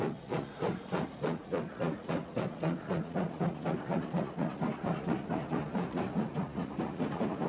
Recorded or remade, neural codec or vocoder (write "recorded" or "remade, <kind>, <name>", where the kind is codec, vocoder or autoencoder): remade, vocoder, Vocos